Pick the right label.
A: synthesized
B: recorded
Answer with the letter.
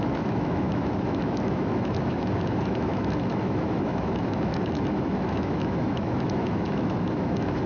A